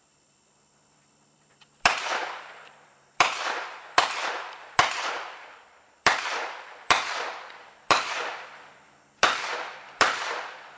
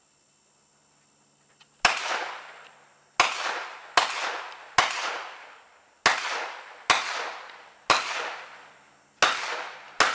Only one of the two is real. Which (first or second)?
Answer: second